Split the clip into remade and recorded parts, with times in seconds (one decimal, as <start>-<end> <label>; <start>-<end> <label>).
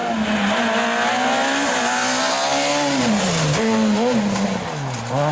0.0-5.3 recorded